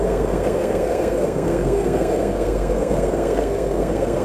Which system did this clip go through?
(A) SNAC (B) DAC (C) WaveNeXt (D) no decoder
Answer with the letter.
A